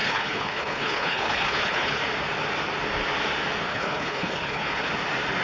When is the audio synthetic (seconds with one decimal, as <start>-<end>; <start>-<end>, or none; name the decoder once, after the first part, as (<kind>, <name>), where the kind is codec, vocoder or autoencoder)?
0.0-2.0 (codec, HILCodec); 3.7-4.9